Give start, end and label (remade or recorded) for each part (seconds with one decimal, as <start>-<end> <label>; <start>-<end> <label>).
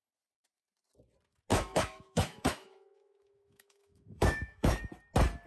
0.0-1.5 recorded; 1.5-4.8 remade; 4.8-5.5 recorded